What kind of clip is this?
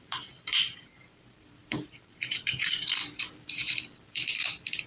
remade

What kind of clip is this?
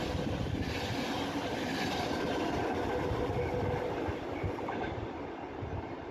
recorded